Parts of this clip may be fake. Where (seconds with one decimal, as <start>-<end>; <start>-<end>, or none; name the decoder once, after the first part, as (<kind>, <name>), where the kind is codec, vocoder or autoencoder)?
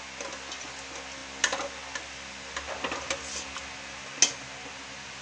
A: none